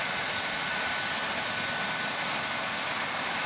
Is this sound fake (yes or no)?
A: no